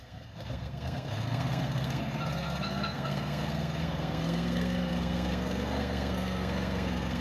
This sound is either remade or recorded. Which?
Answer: remade